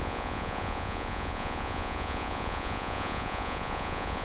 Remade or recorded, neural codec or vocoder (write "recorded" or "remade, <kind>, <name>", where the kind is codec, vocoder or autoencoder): remade, vocoder, Vocos